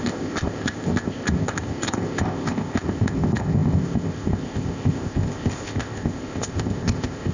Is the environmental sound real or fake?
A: fake